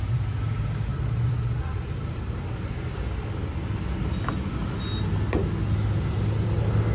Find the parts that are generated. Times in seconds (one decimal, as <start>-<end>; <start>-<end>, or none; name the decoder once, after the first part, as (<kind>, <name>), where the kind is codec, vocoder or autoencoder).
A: 0.9-2.2 (vocoder, BigVGAN v2)